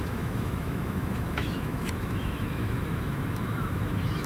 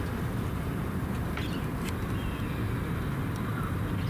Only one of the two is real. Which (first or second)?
second